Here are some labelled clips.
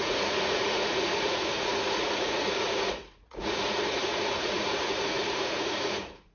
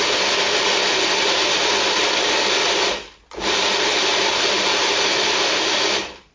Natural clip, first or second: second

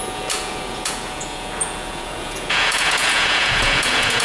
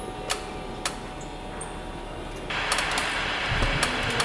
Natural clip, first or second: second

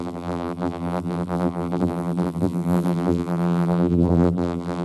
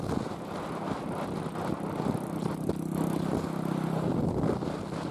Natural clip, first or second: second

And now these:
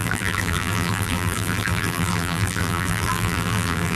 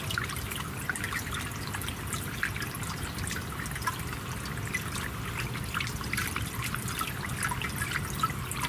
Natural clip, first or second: second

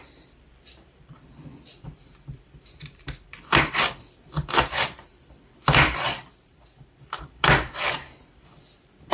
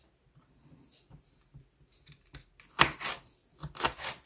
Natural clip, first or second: second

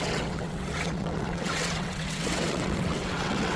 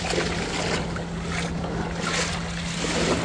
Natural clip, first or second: second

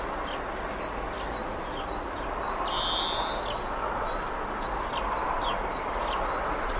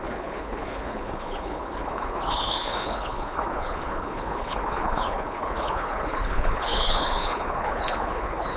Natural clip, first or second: first